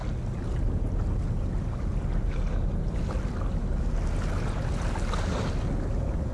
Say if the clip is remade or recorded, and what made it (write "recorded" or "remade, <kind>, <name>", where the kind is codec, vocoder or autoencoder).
recorded